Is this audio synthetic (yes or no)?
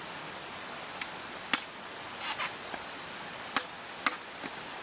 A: no